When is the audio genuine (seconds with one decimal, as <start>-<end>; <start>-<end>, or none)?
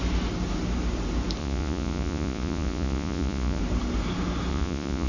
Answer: 0.0-1.4; 3.6-4.5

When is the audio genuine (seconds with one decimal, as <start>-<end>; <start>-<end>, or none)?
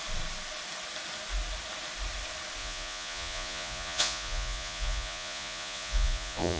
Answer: 0.0-2.6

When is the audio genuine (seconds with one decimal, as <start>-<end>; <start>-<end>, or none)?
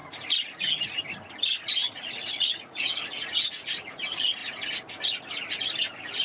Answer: 0.0-1.8; 4.0-6.2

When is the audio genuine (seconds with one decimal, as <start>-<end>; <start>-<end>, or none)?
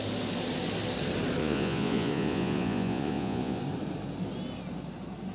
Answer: 0.0-1.4; 3.6-5.3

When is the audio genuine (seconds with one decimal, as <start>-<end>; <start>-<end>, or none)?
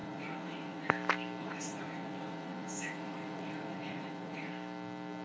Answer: 0.9-1.4; 4.5-5.2